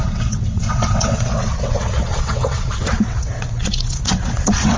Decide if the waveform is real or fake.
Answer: fake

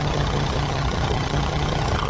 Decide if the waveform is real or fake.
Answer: fake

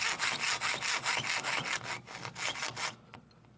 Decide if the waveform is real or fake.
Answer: real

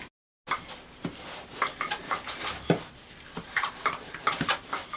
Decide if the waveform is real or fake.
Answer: real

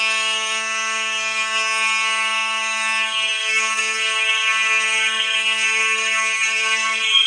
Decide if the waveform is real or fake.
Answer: fake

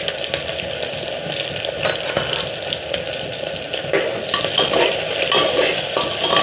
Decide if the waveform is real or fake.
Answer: real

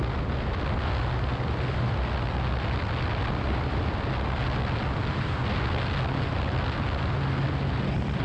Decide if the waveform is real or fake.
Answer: real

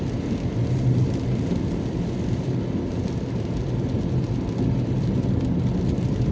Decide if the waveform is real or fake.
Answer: real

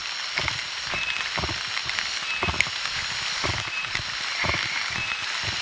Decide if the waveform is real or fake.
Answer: real